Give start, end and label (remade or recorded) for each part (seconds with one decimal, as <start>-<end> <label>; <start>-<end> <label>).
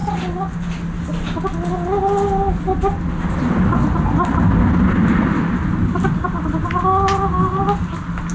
0.0-8.3 recorded